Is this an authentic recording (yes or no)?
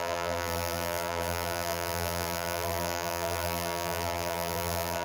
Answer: no